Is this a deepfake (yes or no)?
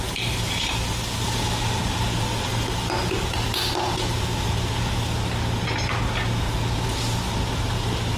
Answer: no